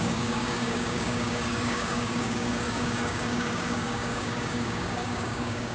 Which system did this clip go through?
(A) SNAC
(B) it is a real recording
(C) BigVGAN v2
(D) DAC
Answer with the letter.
D